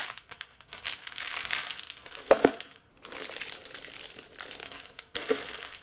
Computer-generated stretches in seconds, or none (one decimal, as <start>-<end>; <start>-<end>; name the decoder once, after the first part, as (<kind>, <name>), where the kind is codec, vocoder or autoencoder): 0.0-2.9 (codec, SNAC); 4.6-5.8